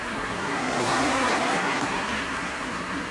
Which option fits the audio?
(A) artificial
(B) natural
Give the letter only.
A